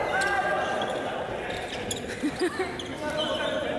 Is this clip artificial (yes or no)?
no